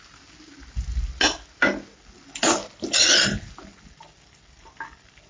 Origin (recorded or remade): recorded